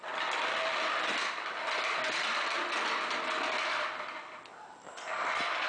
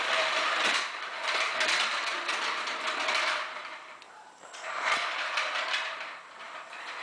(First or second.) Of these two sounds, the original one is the first